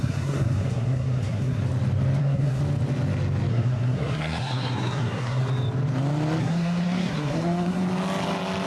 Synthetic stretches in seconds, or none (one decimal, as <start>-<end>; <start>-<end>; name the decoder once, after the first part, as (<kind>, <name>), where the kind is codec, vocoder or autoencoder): 0.0-1.6 (codec, SNAC); 2.2-2.6; 3.5-5.4; 6.4-7.8